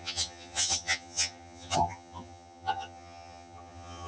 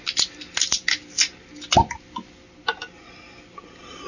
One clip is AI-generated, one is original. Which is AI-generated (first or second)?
first